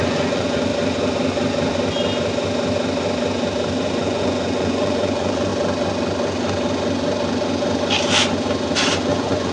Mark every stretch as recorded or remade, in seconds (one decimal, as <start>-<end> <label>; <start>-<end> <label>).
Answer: 0.0-0.7 remade; 0.7-3.8 recorded; 3.8-5.5 remade; 5.5-9.1 recorded; 9.1-9.5 remade